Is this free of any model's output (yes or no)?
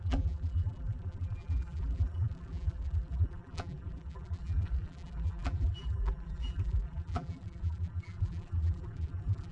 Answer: no